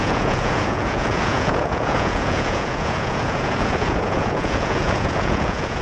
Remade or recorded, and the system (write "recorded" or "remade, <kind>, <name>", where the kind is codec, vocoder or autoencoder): remade, vocoder, Vocos